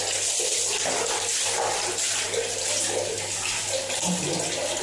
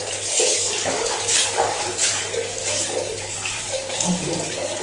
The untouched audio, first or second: first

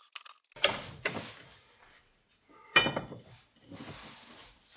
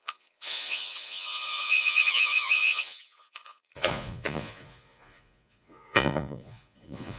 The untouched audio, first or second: first